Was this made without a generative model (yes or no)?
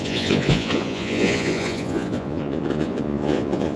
no